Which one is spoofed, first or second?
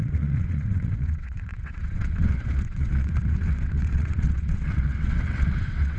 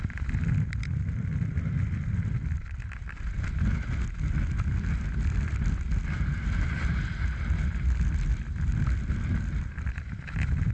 first